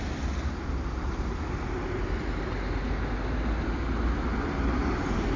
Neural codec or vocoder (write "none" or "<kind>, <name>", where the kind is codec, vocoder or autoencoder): none